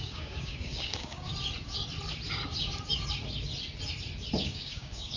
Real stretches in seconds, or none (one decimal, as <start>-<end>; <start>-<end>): 1.3-4.4